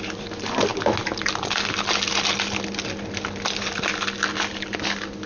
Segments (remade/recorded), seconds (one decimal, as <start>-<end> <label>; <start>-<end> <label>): 0.0-5.3 recorded

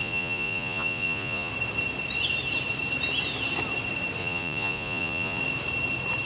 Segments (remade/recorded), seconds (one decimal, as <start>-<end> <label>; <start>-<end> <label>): 0.0-1.5 remade; 1.5-4.2 recorded; 4.2-5.4 remade; 5.4-6.3 recorded